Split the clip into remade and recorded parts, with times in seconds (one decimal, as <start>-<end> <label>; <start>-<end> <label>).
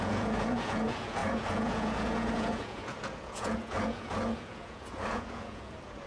0.0-6.1 remade